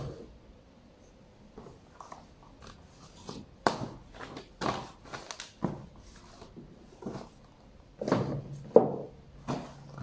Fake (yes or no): no